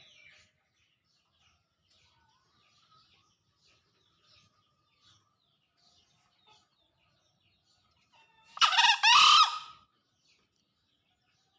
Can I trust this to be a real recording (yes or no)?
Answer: yes